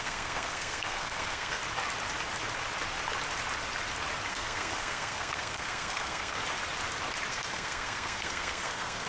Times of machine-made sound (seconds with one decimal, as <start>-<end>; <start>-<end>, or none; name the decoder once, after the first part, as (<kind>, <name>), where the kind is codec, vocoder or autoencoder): 0.0-1.6 (codec, SNAC); 4.3-6.4; 7.3-9.1